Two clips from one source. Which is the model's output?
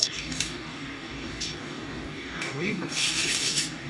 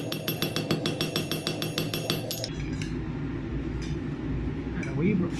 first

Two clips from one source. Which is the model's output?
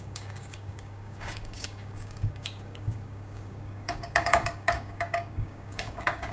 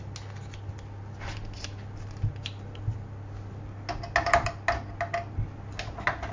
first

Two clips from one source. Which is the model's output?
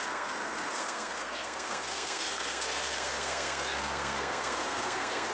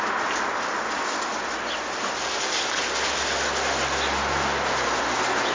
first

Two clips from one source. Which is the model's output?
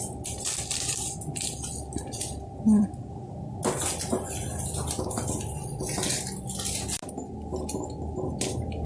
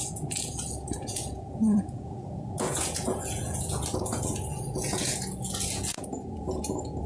second